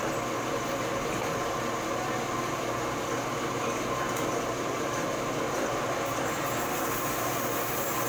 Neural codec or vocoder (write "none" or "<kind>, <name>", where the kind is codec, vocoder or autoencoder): none